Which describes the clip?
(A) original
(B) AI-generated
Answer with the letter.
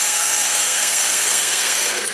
B